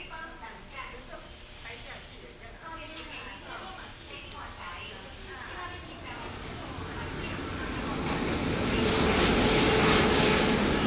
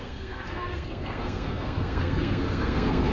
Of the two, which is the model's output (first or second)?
second